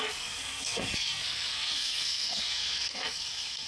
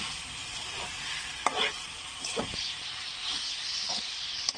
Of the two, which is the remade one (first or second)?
first